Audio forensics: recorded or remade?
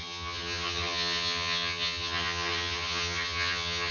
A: remade